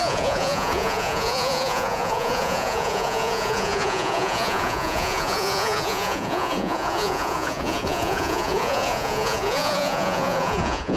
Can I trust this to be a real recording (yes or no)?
no